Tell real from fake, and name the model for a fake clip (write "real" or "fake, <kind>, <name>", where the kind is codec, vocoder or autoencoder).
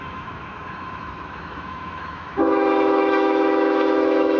fake, autoencoder, DAC-VAE